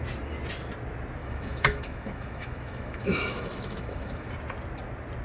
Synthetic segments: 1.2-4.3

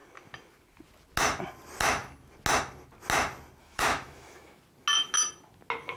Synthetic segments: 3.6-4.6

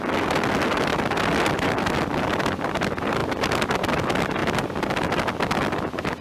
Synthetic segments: none

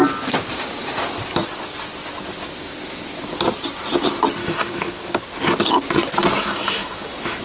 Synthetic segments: 4.4-5.0; 6.4-7.4

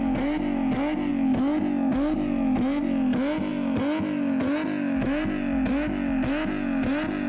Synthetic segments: none

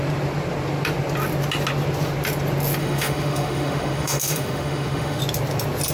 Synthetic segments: 2.8-5.2

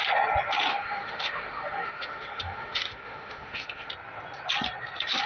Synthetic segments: 0.7-3.9

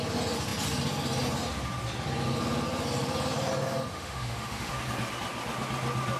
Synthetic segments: 3.9-4.7